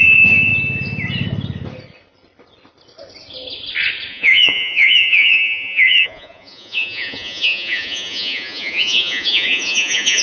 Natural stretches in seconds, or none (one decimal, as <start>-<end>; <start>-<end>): 0.5-4.1